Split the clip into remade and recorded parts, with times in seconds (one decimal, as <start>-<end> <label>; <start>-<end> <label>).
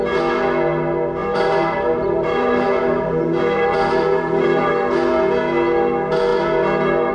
0.0-1.2 recorded; 1.2-4.7 remade; 4.7-7.1 recorded